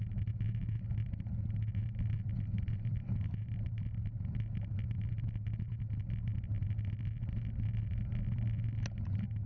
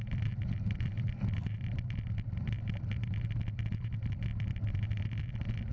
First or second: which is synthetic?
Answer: second